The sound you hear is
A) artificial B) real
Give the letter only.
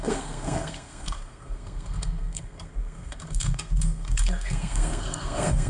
A